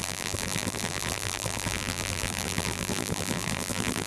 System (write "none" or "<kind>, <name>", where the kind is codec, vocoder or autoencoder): vocoder, BigVGAN v2